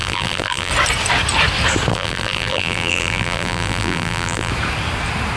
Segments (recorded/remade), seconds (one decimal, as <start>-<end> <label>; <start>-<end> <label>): 0.0-0.7 remade; 0.7-1.9 recorded; 1.9-4.5 remade; 4.5-5.4 recorded